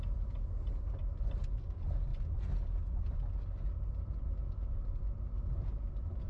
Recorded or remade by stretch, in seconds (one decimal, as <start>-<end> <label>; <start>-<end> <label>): 0.0-2.1 remade; 2.1-4.0 recorded; 4.0-4.4 remade; 4.4-5.1 recorded; 5.1-6.3 remade